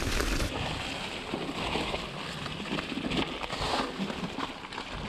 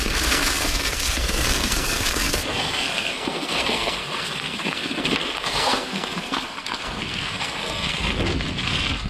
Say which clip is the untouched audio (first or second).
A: first